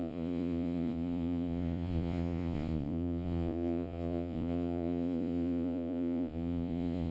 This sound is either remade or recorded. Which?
remade